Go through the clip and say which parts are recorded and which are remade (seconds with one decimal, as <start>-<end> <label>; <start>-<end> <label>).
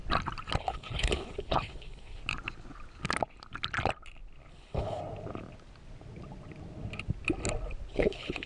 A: 0.0-0.6 recorded; 0.6-2.2 remade; 2.2-4.5 recorded; 4.5-5.0 remade; 5.0-7.9 recorded; 7.9-8.5 remade